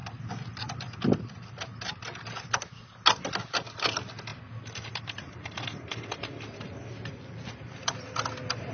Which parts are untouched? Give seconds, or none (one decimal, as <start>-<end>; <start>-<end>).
0.6-4.3; 8.0-8.7